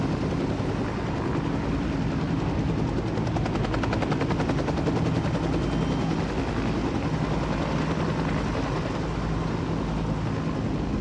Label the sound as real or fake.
real